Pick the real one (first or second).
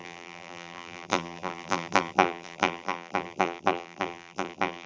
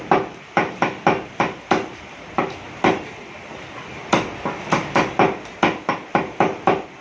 second